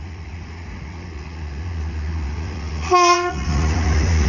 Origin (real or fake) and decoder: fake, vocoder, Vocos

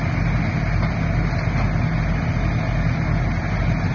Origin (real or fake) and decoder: real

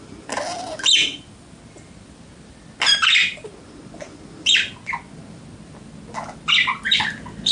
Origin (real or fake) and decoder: real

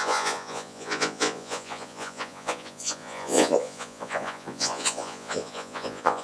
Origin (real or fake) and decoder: fake, vocoder, Vocos